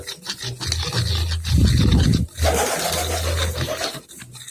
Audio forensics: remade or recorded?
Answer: recorded